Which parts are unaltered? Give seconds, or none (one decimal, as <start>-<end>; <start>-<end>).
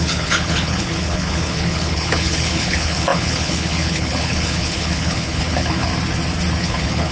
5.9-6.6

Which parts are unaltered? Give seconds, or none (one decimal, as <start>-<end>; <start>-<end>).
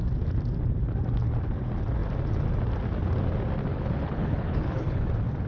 0.0-3.7; 5.1-5.5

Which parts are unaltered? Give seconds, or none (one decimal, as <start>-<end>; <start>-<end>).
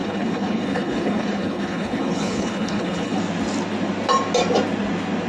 3.2-5.3